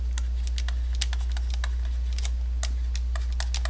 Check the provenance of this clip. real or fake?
real